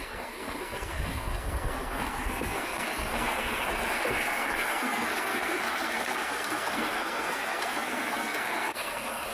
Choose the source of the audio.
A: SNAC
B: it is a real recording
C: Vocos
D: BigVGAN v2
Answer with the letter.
A